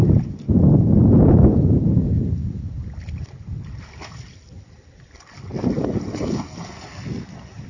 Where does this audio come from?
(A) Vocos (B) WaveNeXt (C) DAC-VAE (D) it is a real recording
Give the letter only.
D